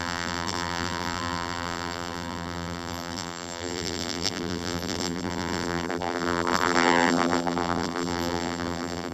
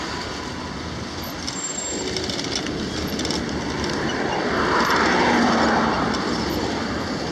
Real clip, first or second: second